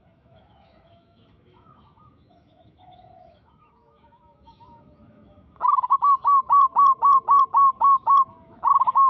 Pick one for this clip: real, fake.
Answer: fake